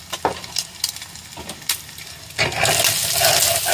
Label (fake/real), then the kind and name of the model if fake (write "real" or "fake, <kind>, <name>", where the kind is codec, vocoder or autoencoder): real